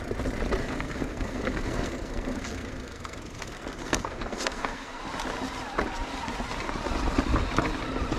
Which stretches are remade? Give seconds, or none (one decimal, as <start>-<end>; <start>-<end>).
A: 0.6-5.0